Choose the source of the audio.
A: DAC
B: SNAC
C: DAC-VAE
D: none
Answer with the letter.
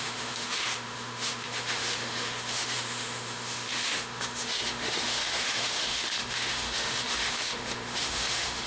C